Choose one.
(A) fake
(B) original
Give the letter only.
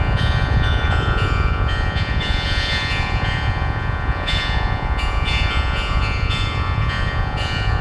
A